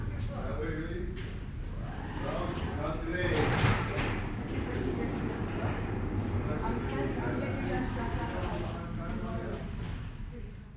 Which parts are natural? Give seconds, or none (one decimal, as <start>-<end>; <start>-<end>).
0.0-3.1; 6.5-10.8